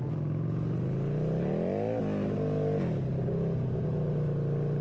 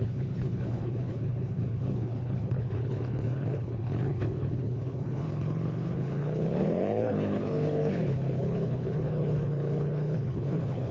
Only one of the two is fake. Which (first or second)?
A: second